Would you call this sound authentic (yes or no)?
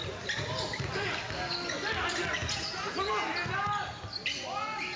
yes